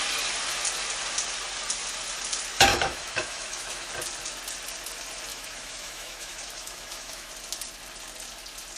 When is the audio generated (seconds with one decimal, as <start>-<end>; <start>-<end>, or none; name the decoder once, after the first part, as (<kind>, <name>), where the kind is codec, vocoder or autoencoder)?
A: 2.7-3.9 (autoencoder, DAC-VAE); 5.3-7.3